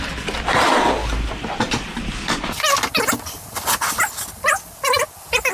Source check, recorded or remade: recorded